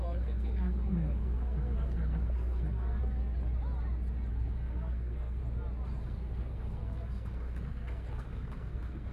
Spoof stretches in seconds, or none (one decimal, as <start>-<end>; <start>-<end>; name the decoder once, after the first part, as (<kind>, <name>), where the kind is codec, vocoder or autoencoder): 0.0-3.0 (codec, SNAC); 4.3-5.4; 6.0-9.1